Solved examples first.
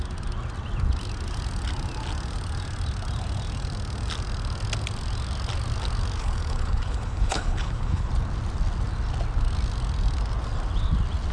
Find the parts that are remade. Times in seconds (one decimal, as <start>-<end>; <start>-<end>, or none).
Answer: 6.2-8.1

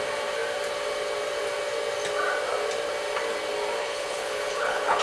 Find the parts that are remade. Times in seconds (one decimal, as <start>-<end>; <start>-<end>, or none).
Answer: 3.8-5.0

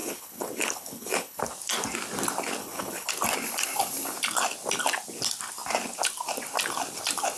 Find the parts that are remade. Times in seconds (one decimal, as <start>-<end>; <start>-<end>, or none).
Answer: 0.0-1.4; 2.6-3.1

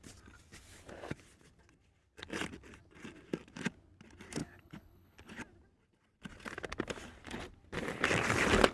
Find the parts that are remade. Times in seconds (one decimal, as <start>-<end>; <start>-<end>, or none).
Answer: 4.4-5.4

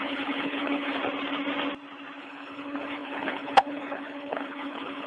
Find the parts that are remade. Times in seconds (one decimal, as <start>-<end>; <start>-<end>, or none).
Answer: 0.0-1.0; 2.2-5.1